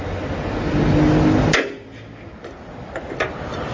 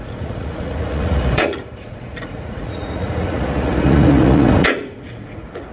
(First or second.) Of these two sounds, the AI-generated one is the second